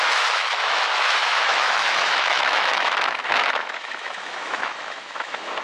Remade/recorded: remade